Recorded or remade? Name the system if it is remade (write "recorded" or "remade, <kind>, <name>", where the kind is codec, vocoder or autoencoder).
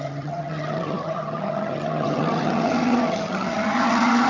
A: remade, vocoder, HiFi-GAN